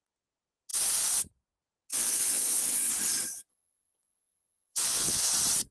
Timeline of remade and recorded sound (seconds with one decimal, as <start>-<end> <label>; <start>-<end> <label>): 0.0-1.9 recorded; 1.9-2.9 remade; 2.9-3.5 recorded; 3.5-5.3 remade; 5.3-5.7 recorded